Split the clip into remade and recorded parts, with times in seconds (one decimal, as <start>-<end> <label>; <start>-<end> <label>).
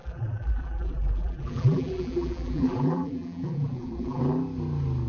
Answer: 0.0-4.2 remade; 4.2-5.1 recorded